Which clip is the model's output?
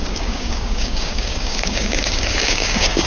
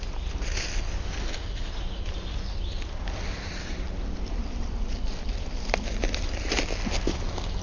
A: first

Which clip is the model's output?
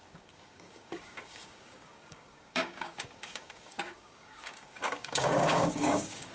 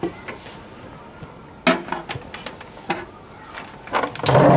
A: first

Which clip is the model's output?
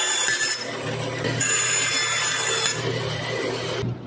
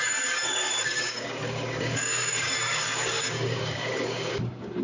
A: second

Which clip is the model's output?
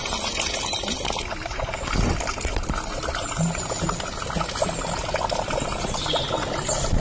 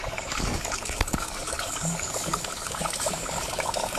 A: second